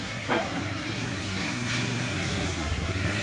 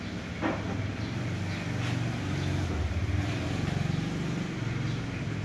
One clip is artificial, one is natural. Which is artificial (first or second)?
first